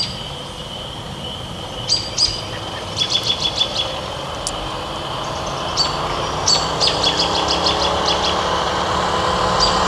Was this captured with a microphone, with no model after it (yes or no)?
yes